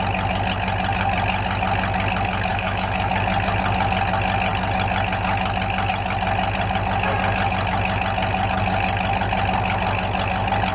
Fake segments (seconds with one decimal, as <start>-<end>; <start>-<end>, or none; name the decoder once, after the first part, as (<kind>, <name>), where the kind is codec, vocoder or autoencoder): 2.5-3.1 (autoencoder, DAC-VAE)